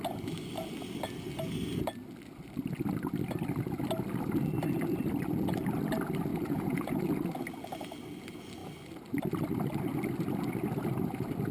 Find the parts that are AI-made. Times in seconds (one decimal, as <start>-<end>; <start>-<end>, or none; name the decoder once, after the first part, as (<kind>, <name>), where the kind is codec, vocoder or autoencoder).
6.3-7.0 (vocoder, Vocos)